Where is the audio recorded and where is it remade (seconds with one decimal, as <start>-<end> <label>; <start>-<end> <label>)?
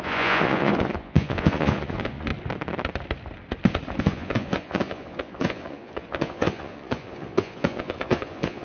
0.0-2.3 remade; 2.3-4.0 recorded; 4.0-8.6 remade